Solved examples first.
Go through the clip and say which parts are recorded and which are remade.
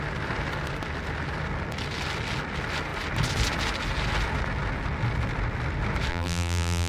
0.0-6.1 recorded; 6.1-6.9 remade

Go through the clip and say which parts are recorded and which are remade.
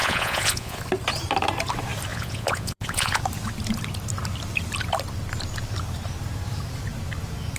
0.0-0.8 remade; 0.8-2.1 recorded; 2.1-3.2 remade; 3.2-7.6 recorded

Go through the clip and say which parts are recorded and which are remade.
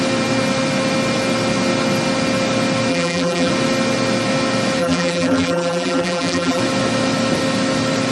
0.0-2.9 recorded; 2.9-3.5 remade; 3.5-4.8 recorded; 4.8-6.6 remade; 6.6-8.1 recorded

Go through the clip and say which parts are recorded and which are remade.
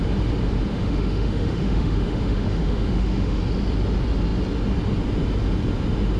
0.0-0.7 recorded; 0.7-3.4 remade; 3.4-6.2 recorded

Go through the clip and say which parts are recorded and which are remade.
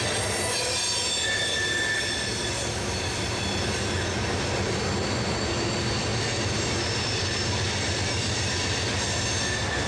0.0-9.9 recorded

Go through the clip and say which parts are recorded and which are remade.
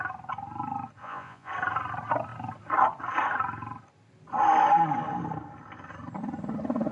0.0-1.0 recorded; 1.0-1.5 remade; 1.5-6.9 recorded